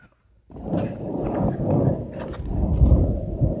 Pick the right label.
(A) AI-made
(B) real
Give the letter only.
B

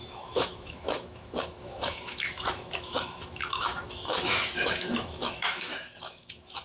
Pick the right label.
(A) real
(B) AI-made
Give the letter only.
B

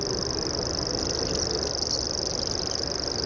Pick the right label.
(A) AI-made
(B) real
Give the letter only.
B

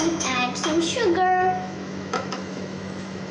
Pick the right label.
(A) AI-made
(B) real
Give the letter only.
A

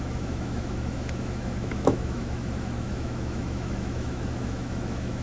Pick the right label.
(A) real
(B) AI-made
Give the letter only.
B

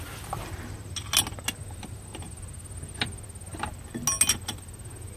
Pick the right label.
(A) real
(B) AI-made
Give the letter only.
A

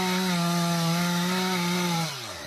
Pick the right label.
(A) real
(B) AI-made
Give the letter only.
A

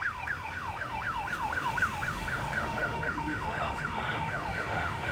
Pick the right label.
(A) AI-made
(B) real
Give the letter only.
A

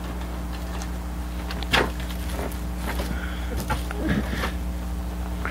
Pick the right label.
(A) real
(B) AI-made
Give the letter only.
A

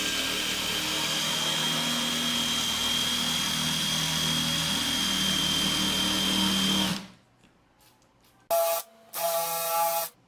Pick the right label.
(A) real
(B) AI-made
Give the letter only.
A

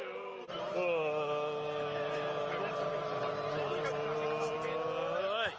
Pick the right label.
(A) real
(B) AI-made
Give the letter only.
A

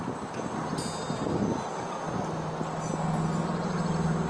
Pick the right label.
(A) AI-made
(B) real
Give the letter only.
B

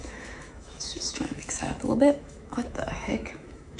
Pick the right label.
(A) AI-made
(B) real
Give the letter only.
A